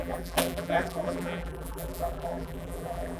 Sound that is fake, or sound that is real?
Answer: fake